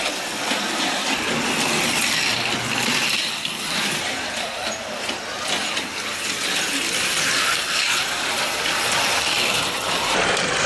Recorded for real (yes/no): no